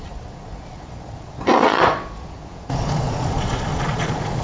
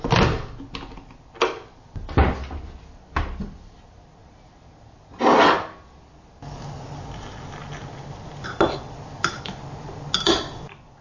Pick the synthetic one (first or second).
first